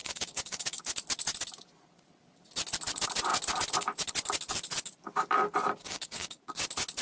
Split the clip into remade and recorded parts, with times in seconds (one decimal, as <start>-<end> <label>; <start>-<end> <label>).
0.0-0.8 remade; 0.8-5.8 recorded; 5.8-6.4 remade; 6.4-7.0 recorded